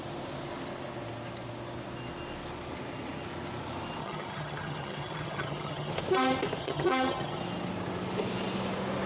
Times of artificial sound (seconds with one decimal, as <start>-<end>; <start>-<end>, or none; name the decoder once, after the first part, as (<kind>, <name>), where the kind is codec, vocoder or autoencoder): 4.0-5.9 (vocoder, HiFi-GAN); 6.6-7.4